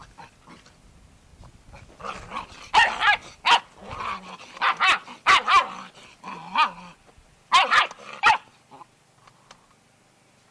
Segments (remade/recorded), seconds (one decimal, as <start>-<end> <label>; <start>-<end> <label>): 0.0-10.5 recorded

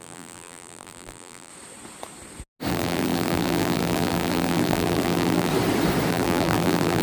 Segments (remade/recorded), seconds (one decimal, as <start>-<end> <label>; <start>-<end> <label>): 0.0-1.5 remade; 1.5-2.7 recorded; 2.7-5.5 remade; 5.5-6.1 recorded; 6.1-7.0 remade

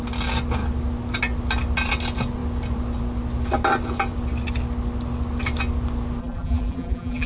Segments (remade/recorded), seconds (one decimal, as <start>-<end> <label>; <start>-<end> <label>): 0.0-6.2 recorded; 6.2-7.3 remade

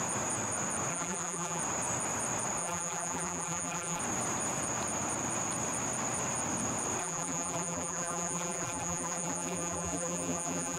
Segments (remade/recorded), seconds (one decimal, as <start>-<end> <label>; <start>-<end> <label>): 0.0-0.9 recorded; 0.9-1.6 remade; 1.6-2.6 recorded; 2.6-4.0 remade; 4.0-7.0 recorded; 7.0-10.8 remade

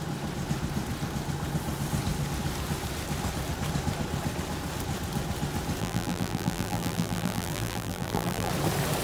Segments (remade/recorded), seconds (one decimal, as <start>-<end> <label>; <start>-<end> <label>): 0.0-5.8 recorded; 5.8-8.5 remade; 8.5-9.0 recorded

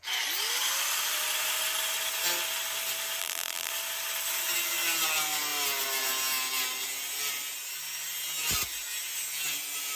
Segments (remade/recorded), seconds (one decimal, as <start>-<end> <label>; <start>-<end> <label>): 0.0-3.2 recorded; 3.2-3.7 remade; 3.7-10.0 recorded

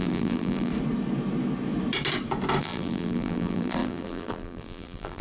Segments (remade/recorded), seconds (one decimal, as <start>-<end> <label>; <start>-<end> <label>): 0.0-0.7 remade; 0.7-2.6 recorded; 2.6-5.2 remade

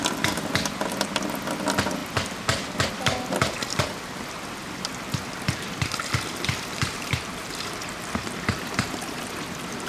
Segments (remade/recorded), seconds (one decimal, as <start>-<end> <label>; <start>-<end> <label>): 0.0-4.6 recorded; 4.6-9.9 remade